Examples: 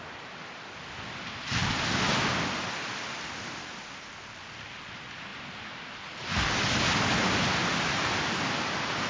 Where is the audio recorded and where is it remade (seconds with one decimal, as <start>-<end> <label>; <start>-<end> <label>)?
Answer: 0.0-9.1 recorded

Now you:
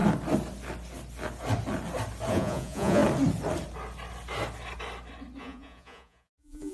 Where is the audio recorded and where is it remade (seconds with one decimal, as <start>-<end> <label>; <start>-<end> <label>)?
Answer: 0.0-2.3 recorded; 2.3-3.0 remade; 3.0-5.4 recorded; 5.4-6.7 remade

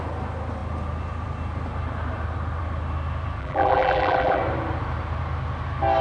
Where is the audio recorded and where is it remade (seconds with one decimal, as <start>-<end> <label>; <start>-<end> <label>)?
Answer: 0.0-3.4 recorded; 3.4-4.4 remade; 4.4-6.0 recorded

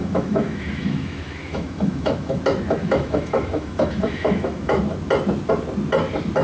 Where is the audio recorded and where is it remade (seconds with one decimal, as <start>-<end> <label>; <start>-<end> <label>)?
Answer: 0.0-2.4 remade; 2.4-2.8 recorded; 2.8-4.8 remade; 4.8-6.4 recorded

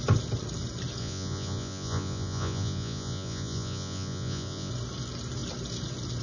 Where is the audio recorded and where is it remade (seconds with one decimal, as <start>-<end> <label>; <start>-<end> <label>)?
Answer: 0.0-1.0 recorded; 1.0-4.7 remade; 4.7-6.2 recorded

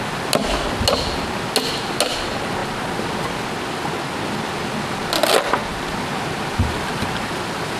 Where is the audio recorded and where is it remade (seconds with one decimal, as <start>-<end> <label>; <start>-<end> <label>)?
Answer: 0.0-7.8 recorded

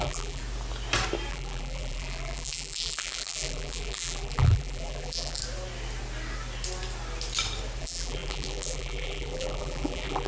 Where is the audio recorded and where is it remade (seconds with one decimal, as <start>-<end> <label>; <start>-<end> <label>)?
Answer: 0.0-0.4 remade; 0.4-1.3 recorded; 1.3-5.4 remade; 5.4-7.8 recorded; 7.8-10.3 remade

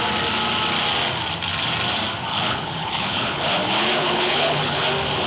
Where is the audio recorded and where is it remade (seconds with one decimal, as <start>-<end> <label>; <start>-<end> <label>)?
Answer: 0.0-2.3 recorded; 2.3-3.5 remade; 3.5-4.0 recorded; 4.0-4.8 remade; 4.8-5.3 recorded